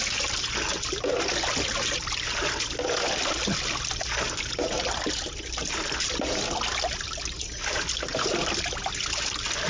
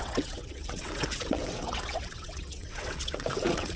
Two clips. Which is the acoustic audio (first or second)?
first